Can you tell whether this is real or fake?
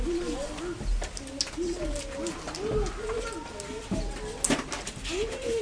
real